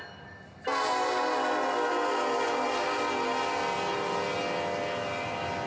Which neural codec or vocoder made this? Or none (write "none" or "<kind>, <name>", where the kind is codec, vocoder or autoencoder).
none